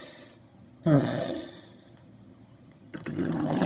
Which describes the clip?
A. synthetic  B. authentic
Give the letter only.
A